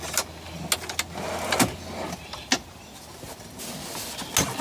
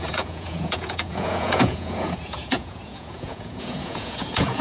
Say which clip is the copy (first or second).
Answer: second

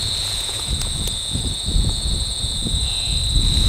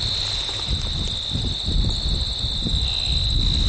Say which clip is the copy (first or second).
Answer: first